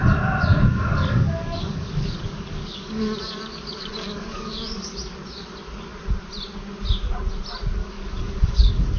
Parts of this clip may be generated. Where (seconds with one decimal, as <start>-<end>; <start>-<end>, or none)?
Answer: 0.5-4.9; 7.8-9.0